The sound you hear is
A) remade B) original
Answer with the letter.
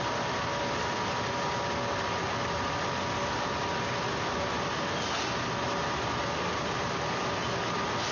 B